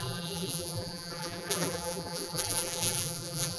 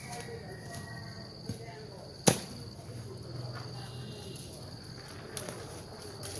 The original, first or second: second